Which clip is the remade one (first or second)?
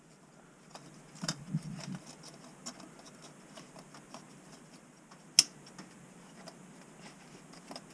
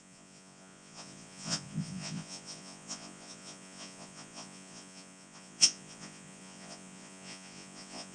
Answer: second